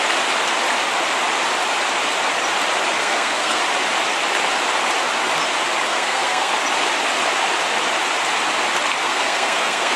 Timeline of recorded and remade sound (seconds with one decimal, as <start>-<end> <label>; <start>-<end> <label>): 0.0-3.0 recorded; 3.0-3.6 remade; 3.6-5.9 recorded; 5.9-6.5 remade; 6.5-9.0 recorded; 9.0-10.0 remade